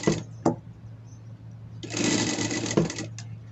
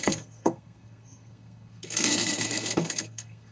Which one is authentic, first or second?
first